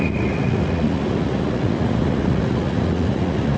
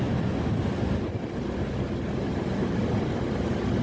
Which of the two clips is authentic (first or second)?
second